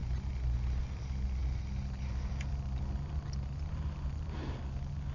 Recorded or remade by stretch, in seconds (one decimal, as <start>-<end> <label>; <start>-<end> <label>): 0.0-5.1 recorded